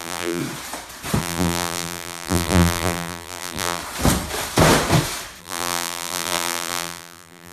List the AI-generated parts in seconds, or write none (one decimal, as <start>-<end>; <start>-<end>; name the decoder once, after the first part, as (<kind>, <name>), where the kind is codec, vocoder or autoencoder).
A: 0.0-0.4 (vocoder, BigVGAN v2); 1.2-3.8; 5.4-7.5